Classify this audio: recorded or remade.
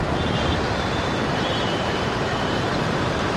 remade